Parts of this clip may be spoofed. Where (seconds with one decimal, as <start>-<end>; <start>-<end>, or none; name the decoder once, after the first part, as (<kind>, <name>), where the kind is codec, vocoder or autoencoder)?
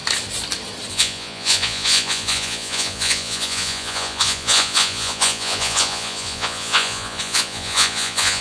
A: 0.9-8.4 (vocoder, Vocos)